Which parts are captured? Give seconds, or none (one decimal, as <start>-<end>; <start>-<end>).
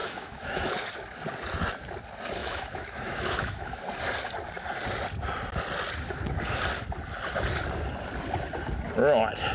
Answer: 0.7-2.4; 3.8-9.5